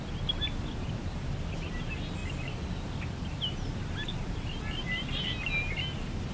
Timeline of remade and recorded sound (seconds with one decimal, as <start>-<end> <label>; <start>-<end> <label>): 0.0-6.3 recorded

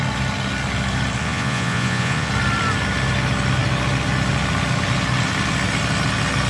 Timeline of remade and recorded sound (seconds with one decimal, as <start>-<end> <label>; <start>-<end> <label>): 0.0-1.2 recorded; 1.2-2.3 remade; 2.3-6.5 recorded

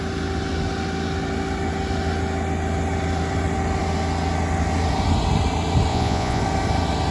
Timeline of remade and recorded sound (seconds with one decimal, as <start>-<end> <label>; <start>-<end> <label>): 0.0-5.9 recorded; 5.9-6.4 remade; 6.4-7.1 recorded

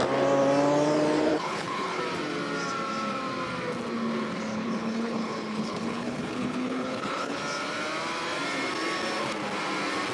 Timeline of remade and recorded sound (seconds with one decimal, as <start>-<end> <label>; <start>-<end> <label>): 0.0-1.3 recorded; 1.3-2.0 remade; 2.0-4.5 recorded; 4.5-7.4 remade; 7.4-10.1 recorded

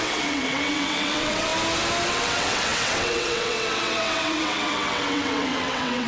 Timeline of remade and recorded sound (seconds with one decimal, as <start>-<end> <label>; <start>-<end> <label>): 0.0-1.5 remade; 1.5-2.1 recorded; 2.1-6.1 remade

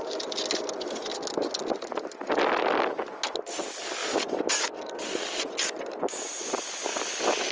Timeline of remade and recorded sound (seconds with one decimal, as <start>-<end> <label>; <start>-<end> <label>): 0.0-7.5 recorded

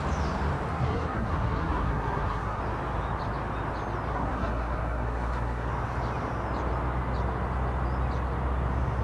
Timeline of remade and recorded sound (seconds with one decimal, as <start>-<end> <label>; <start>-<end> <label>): 0.0-0.7 recorded; 0.7-2.6 remade; 2.6-4.1 recorded; 4.1-5.7 remade; 5.7-9.0 recorded